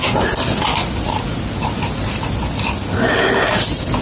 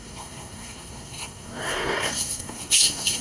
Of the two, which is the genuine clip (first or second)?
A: first